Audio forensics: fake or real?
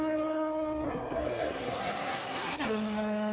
fake